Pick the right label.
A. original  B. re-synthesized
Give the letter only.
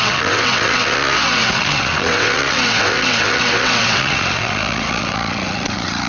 B